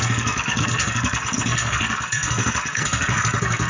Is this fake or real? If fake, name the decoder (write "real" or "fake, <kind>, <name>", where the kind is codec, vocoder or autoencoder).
fake, codec, SNAC